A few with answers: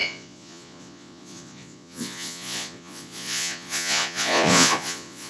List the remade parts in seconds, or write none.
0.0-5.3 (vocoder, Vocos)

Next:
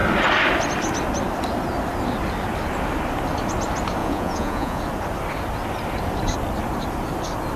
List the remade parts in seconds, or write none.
4.0-4.8 (vocoder, Vocos)

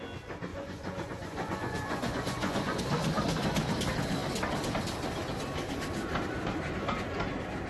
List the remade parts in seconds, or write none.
0.5-2.8 (vocoder, Vocos)